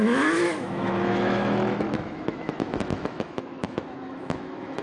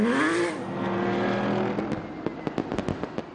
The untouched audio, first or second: second